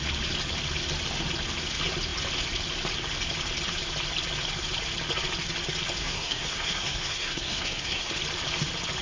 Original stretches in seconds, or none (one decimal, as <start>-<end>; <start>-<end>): 0.0-6.0; 8.1-9.0